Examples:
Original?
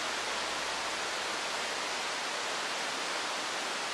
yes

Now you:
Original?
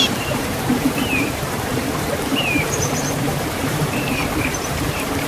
no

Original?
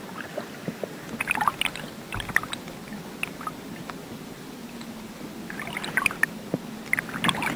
yes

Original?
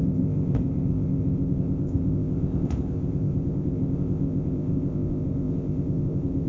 no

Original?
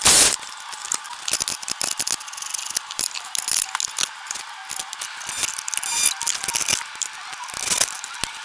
yes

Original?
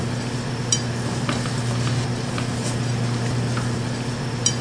yes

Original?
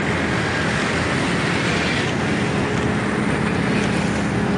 yes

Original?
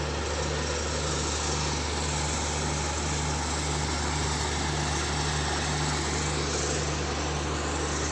yes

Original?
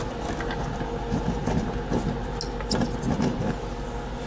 yes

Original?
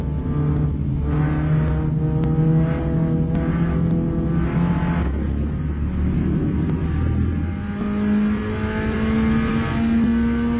yes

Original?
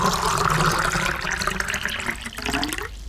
yes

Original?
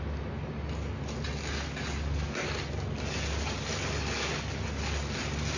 yes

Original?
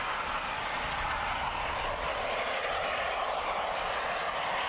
yes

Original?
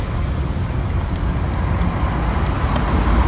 yes